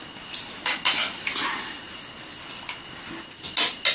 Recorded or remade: recorded